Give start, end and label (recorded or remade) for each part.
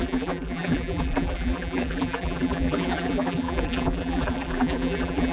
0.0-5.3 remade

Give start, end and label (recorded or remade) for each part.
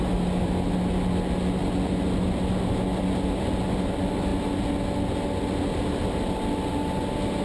0.0-7.4 recorded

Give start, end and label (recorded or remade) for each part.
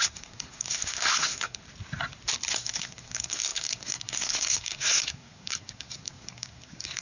0.0-1.6 remade; 1.6-2.5 recorded; 2.5-7.0 remade